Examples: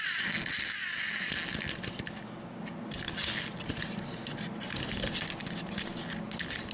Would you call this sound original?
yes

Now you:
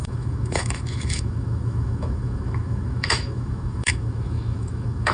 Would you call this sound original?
no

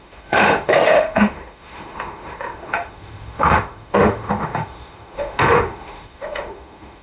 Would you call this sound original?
no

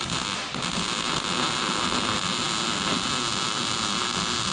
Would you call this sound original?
yes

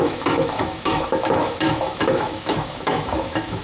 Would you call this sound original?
no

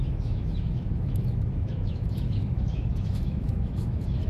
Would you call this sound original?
no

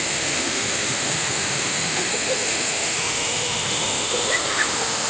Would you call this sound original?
no